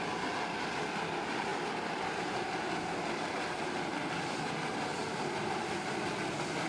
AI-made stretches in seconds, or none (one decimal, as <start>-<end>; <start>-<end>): none